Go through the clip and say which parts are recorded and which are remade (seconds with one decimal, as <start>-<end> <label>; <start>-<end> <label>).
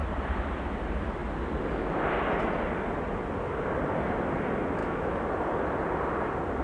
0.0-4.8 recorded; 4.8-5.3 remade; 5.3-6.6 recorded